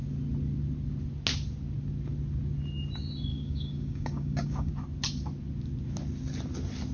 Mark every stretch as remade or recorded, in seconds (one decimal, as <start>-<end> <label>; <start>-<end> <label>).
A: 0.0-3.3 recorded; 3.3-4.7 remade; 4.7-6.9 recorded